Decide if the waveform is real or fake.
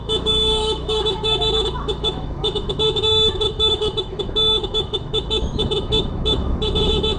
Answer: fake